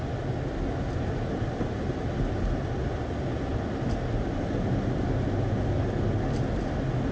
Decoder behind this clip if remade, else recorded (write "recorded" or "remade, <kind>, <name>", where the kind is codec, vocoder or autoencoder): recorded